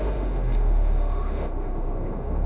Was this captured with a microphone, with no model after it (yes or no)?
no